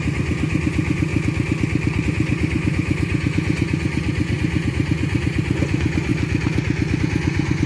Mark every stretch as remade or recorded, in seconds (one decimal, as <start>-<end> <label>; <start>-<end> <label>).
0.0-1.1 remade; 1.1-2.0 recorded; 2.0-6.1 remade; 6.1-7.0 recorded; 7.0-7.7 remade

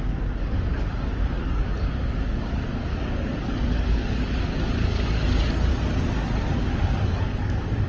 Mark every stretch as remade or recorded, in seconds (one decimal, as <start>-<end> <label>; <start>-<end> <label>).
0.0-5.7 remade; 5.7-6.6 recorded; 6.6-7.9 remade

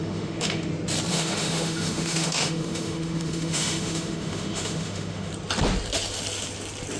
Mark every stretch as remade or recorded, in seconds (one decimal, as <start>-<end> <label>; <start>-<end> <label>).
0.0-0.7 remade; 0.7-1.1 recorded; 1.1-5.3 remade; 5.3-7.0 recorded